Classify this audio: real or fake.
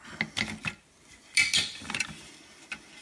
real